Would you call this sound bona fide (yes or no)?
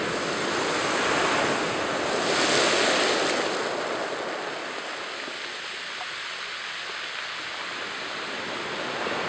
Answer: yes